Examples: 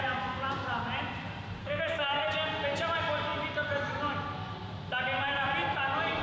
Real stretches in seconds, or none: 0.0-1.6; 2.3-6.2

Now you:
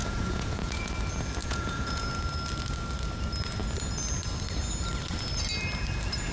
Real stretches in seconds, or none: 0.9-1.4; 2.1-6.3

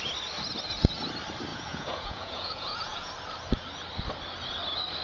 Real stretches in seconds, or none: 0.0-1.5; 3.1-5.0

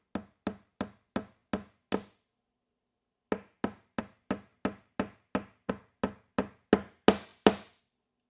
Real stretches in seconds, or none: 0.0-8.3

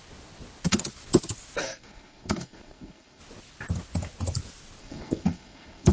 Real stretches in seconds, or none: 0.0-1.6; 3.2-4.8